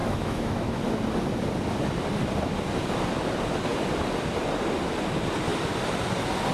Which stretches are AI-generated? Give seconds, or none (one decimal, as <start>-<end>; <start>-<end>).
0.0-0.8